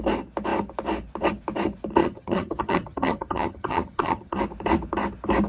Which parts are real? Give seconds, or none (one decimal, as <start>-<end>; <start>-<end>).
0.0-2.0; 4.4-5.5